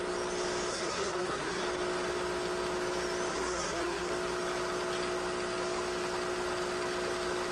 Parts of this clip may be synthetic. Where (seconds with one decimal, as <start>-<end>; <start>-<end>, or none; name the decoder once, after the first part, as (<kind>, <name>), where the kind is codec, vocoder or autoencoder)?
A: 0.7-1.6 (codec, SNAC); 3.3-4.1